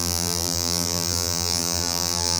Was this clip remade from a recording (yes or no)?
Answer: yes